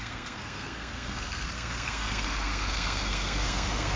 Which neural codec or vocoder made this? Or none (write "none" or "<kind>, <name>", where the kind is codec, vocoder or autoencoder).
codec, SNAC